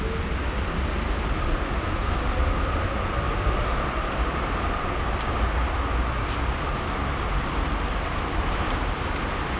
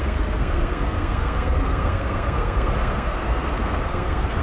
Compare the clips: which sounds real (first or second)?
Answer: first